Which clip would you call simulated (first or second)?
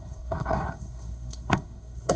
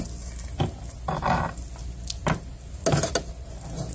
first